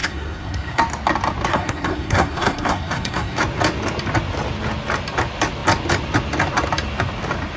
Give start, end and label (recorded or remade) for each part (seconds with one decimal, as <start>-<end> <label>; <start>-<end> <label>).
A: 0.0-0.8 remade; 0.8-1.5 recorded; 1.5-3.4 remade; 3.4-7.6 recorded